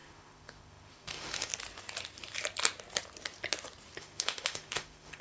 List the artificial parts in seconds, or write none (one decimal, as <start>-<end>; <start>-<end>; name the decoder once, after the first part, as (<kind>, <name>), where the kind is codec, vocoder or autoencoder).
0.0-1.5 (autoencoder, DAC-VAE); 4.0-5.2